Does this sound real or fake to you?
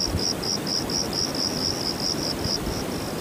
real